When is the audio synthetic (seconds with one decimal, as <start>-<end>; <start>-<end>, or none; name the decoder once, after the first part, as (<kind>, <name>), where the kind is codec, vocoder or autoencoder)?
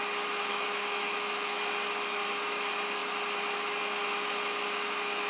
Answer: 0.5-1.6 (autoencoder, DAC-VAE)